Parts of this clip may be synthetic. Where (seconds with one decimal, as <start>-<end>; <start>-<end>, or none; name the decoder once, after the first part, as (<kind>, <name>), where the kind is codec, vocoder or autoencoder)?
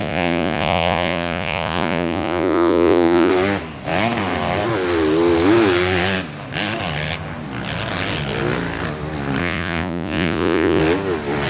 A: 0.0-3.3 (vocoder, Vocos); 9.4-10.8